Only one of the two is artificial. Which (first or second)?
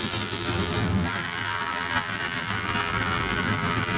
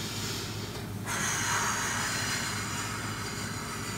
first